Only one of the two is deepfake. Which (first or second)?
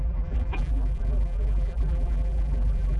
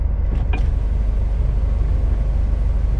first